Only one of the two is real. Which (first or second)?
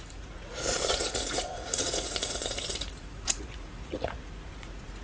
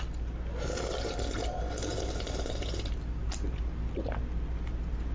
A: second